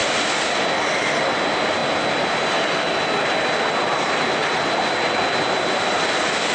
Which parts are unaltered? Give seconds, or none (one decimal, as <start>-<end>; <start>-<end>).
0.0-6.5